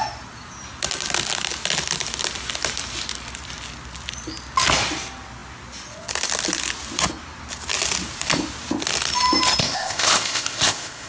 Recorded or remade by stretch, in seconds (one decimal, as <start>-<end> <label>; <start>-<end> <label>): 0.0-9.6 recorded; 9.6-11.1 remade